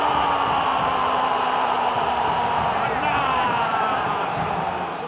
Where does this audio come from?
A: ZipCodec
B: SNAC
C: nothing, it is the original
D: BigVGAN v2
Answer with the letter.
D